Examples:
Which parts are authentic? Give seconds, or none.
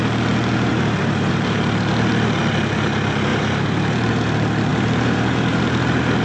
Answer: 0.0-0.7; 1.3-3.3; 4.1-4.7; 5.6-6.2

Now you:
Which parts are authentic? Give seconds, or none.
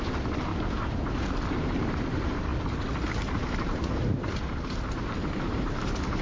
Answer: 0.5-1.5; 2.5-3.1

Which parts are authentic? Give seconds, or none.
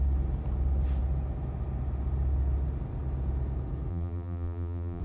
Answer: 0.0-3.9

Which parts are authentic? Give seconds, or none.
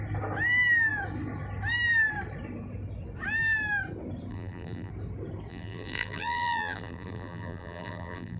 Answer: 0.0-4.3; 4.9-5.5